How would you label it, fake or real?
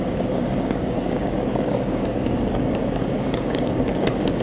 fake